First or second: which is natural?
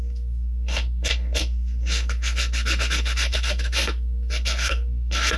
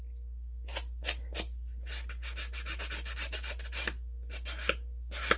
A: second